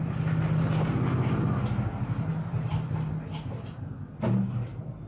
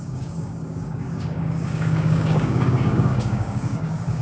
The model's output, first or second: second